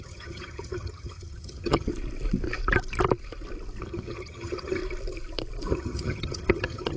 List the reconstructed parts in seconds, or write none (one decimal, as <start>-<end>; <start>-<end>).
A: 0.0-1.9; 3.8-4.8; 5.7-7.0